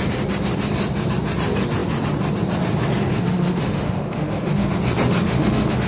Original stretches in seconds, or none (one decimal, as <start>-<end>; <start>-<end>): 0.0-3.1; 4.7-5.2